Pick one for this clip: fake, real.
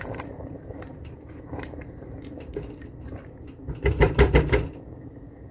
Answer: fake